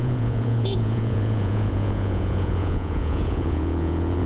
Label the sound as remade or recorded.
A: remade